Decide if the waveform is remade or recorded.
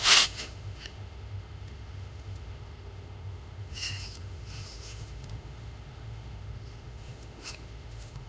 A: remade